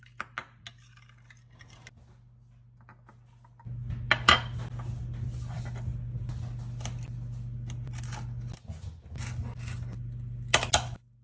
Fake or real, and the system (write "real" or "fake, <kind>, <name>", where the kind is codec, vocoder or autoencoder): real